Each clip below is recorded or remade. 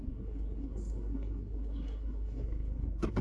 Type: remade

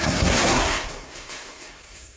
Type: remade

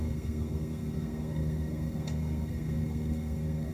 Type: remade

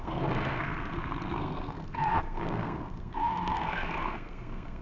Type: remade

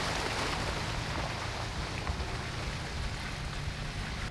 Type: recorded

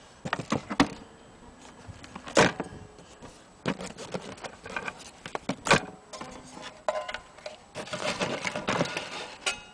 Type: recorded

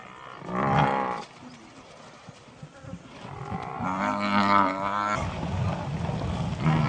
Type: recorded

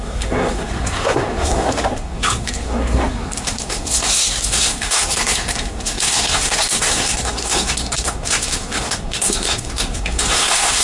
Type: remade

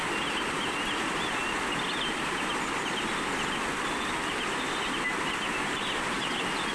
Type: recorded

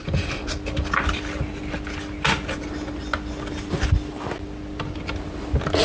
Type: recorded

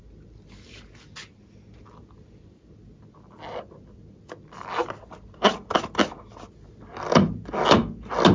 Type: recorded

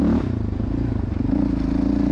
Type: recorded